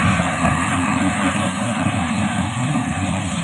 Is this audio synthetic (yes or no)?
yes